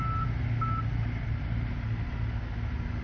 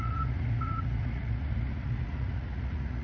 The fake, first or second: second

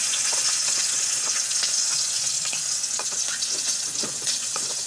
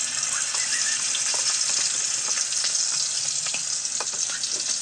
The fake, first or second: first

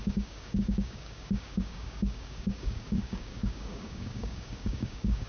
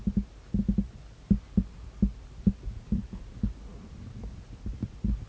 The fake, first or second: first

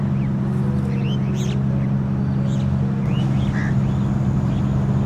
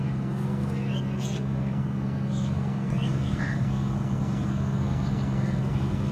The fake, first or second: second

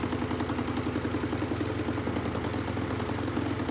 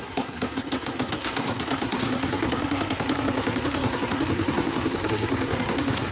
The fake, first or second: second